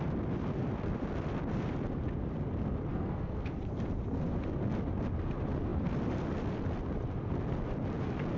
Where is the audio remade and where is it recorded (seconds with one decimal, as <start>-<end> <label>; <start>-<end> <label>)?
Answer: 0.0-2.9 recorded; 2.9-3.6 remade; 3.6-8.4 recorded